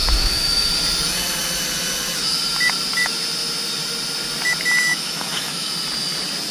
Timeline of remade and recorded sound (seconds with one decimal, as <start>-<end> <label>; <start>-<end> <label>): 0.0-0.7 remade; 0.7-4.9 recorded; 4.9-5.7 remade; 5.7-6.5 recorded